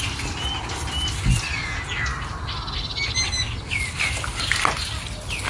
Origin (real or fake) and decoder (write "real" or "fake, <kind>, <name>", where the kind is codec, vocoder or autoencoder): real